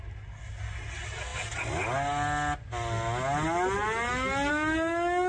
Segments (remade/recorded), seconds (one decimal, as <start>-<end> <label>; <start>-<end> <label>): 0.0-5.3 recorded